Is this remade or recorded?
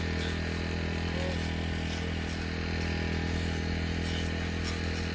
recorded